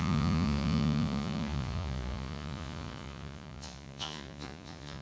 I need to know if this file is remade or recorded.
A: remade